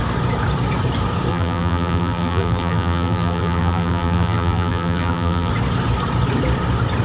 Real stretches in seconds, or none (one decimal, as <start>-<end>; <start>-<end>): 0.0-1.3; 5.5-7.0